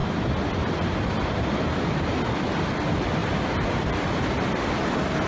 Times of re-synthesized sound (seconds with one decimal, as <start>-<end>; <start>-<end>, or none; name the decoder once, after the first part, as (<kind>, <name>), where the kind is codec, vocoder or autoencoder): 0.0-1.3 (vocoder, BigVGAN v2)